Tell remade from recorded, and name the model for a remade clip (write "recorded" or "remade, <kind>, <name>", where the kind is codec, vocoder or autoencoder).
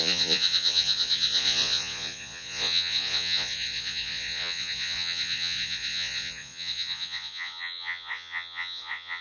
remade, vocoder, Vocos